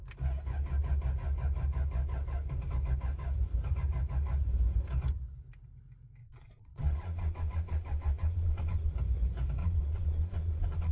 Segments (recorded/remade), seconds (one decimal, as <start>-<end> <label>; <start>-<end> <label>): 0.0-6.2 recorded; 6.2-8.9 remade; 8.9-9.6 recorded; 9.6-10.9 remade